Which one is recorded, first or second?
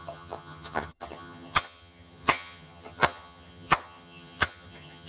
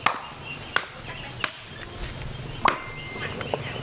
second